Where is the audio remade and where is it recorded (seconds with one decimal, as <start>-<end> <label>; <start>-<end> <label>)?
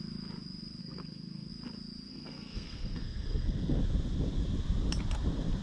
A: 0.0-0.8 recorded; 0.8-1.5 remade; 1.5-2.1 recorded; 2.1-3.8 remade; 3.8-5.6 recorded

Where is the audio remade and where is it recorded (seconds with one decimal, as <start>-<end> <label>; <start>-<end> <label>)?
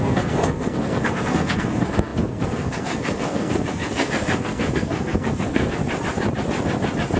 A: 0.0-5.8 remade; 5.8-7.2 recorded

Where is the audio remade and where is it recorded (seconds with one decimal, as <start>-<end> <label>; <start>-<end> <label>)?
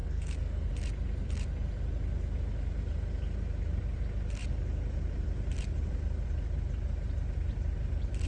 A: 0.0-0.7 remade; 0.7-8.3 recorded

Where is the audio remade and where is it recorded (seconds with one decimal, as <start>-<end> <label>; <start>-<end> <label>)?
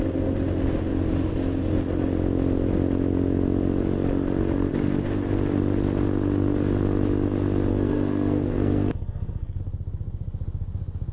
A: 0.0-7.7 recorded; 7.7-9.6 remade; 9.6-11.1 recorded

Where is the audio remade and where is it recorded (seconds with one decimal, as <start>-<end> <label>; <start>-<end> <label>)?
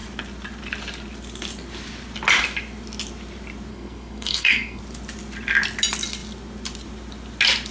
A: 0.0-3.7 recorded; 3.7-4.8 remade; 4.8-7.7 recorded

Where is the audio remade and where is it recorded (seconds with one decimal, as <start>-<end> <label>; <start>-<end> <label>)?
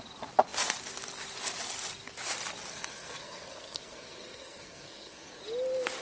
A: 0.0-2.7 recorded; 2.7-5.4 remade; 5.4-6.0 recorded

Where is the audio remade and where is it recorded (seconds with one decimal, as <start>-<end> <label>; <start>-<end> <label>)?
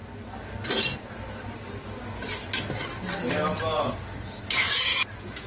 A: 0.0-5.5 recorded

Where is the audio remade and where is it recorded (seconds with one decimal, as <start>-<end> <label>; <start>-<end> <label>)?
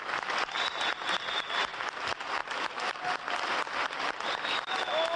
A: 0.0-5.2 recorded